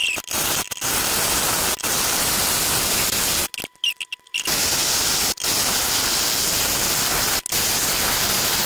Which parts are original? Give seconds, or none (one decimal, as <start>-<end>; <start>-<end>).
0.0-1.9; 3.0-4.8; 5.8-8.7

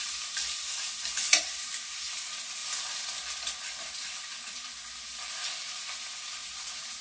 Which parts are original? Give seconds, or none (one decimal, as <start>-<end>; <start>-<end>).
2.6-3.8; 4.3-5.3

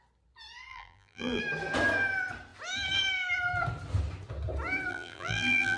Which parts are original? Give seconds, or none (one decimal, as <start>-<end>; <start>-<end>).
0.0-0.7; 1.4-4.9

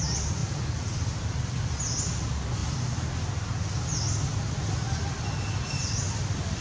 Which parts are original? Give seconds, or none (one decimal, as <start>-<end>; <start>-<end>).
0.0-6.6

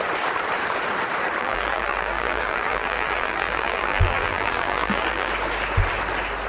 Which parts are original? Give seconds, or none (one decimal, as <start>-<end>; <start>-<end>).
0.0-1.4; 5.3-6.5

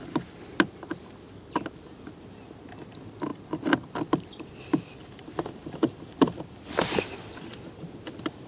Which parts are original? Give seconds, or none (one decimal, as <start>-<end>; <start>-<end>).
none